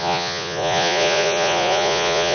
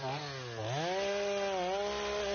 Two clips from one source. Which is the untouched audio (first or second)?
second